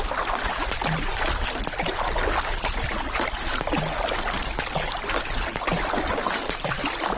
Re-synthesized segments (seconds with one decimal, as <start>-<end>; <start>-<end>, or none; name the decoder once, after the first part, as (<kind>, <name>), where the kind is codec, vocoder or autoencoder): none

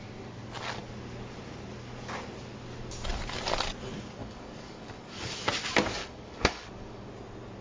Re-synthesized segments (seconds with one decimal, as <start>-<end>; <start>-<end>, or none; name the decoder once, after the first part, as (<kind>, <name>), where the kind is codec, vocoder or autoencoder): 4.2-5.5 (codec, DAC); 6.0-7.1